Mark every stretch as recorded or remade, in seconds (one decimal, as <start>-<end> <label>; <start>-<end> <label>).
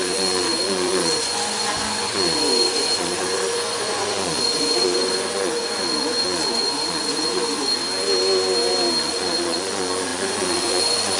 0.0-7.8 remade; 7.8-9.0 recorded; 9.0-11.2 remade